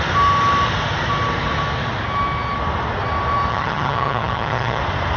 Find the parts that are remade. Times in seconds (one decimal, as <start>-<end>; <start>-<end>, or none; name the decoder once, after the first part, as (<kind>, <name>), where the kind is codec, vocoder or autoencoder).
3.5-4.8 (vocoder, HiFi-GAN)